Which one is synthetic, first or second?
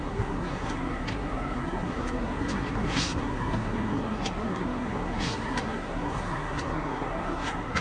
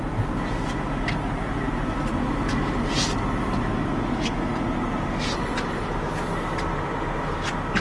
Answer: first